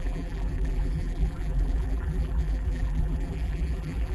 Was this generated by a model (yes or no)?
yes